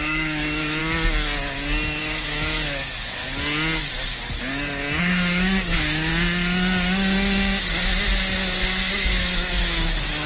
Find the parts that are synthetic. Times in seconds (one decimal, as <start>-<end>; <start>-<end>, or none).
0.0-0.8; 2.0-3.2; 5.0-6.1; 8.6-10.3